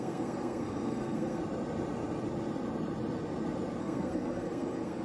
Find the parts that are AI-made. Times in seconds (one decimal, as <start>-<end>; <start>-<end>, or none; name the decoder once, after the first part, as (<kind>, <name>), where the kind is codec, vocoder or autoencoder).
0.0-1.4 (codec, SNAC); 3.8-5.0